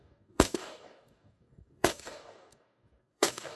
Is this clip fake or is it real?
fake